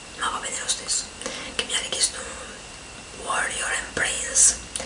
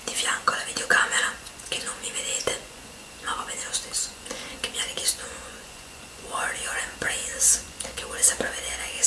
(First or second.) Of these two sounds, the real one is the first